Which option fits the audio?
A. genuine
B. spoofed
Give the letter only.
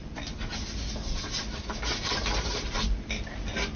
A